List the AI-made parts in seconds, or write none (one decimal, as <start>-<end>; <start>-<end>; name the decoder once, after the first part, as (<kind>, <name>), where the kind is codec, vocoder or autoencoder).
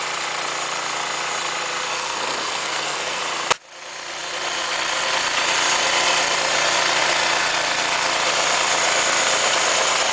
1.9-3.2 (codec, SNAC)